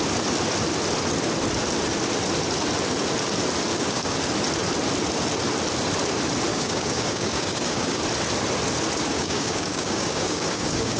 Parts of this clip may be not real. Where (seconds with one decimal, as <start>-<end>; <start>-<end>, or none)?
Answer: 3.7-4.2; 6.5-8.0; 9.1-11.0